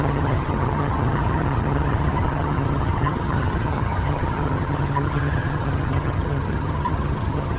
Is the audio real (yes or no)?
no